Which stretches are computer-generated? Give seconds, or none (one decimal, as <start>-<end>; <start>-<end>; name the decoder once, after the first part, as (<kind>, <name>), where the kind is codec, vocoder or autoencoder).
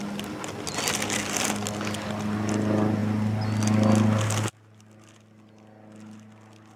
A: none